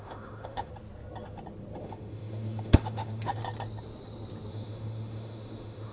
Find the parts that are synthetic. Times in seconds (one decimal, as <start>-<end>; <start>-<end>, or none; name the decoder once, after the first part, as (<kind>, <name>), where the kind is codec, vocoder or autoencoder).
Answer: 0.0-0.7 (autoencoder, DAC-VAE); 1.8-3.4; 4.5-5.9